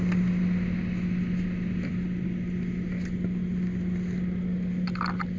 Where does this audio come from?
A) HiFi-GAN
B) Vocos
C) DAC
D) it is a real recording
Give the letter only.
D